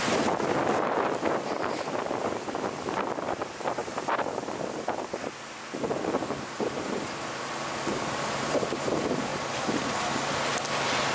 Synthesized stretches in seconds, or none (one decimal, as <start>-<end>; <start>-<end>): 0.0-9.3; 10.0-11.1